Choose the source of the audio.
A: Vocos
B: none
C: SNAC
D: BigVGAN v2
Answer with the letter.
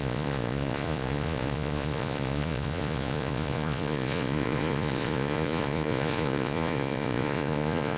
A